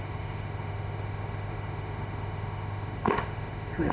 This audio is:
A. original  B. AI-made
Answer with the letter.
B